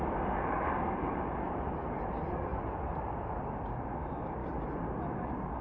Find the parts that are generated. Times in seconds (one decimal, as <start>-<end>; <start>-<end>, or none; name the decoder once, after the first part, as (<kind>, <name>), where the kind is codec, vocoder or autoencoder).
none